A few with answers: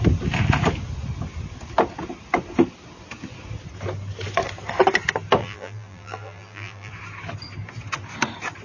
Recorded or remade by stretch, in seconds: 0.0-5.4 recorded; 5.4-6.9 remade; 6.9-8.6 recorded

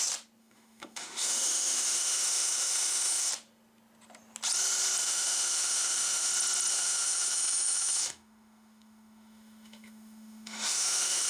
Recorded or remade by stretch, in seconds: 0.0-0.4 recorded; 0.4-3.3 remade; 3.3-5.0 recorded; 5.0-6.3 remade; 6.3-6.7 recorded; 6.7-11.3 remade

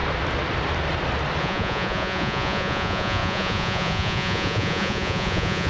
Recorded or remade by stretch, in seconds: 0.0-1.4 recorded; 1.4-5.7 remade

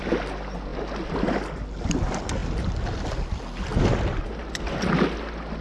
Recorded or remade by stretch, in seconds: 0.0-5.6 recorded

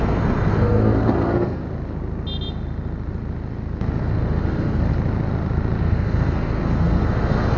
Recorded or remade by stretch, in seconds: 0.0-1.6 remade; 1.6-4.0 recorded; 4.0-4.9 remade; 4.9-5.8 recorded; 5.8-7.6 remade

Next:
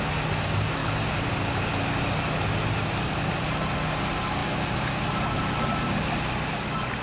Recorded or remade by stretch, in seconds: 0.0-7.0 recorded

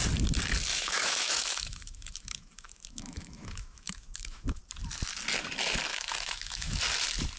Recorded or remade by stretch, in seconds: 0.0-0.7 recorded; 0.7-4.6 remade; 4.6-5.9 recorded; 5.9-6.8 remade; 6.8-7.4 recorded

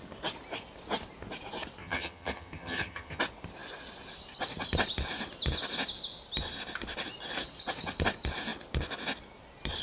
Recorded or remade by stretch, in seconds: 0.0-1.8 recorded; 1.8-3.2 remade; 3.2-9.8 recorded